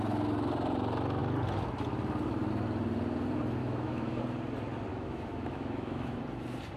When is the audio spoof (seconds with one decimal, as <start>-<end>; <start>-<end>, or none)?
3.6-4.2; 4.9-6.2